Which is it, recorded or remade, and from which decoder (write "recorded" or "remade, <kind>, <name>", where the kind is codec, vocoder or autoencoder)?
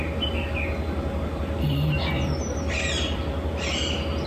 recorded